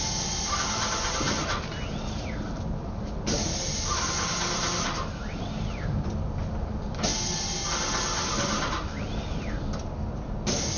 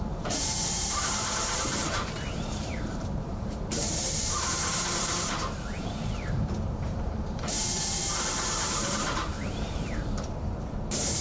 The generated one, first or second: second